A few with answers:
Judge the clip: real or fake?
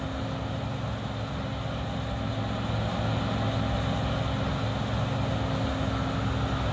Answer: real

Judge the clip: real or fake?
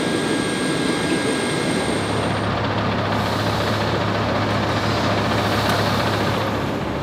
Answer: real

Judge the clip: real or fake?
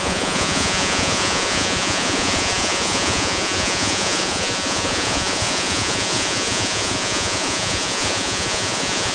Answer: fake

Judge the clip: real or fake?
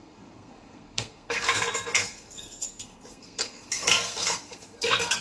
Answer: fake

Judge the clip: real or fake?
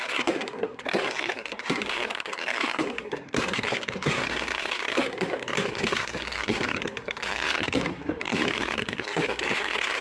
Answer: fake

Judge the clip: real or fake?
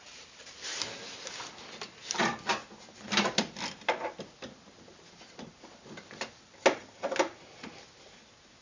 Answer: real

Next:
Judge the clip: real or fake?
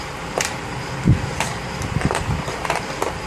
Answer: fake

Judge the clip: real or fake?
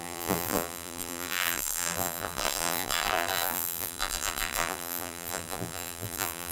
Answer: fake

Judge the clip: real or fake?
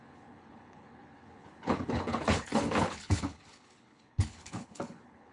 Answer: fake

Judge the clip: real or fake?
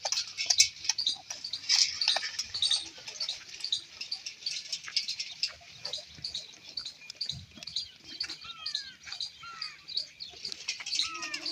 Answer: real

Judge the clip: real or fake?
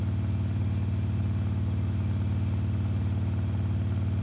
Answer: real